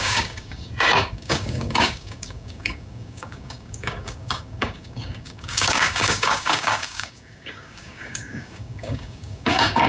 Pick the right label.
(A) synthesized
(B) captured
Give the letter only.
A